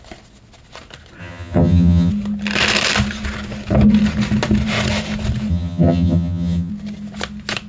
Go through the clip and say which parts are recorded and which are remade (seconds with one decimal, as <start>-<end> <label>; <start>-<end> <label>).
0.0-1.2 recorded; 1.2-2.1 remade; 2.1-5.5 recorded; 5.5-6.7 remade; 6.7-7.7 recorded